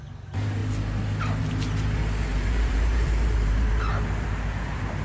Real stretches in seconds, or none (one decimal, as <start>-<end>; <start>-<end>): 0.0-2.3; 3.9-5.0